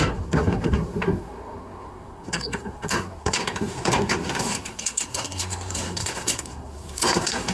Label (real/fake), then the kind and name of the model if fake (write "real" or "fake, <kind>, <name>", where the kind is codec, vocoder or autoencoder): fake, codec, SNAC